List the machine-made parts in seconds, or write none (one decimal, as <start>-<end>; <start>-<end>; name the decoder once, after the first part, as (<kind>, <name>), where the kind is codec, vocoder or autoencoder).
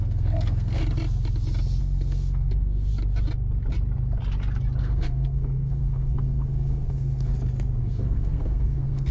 0.0-0.8 (codec, SNAC); 1.8-2.9; 4.8-7.3; 7.8-9.1